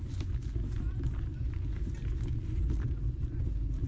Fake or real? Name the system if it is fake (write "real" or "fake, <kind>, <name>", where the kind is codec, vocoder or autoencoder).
real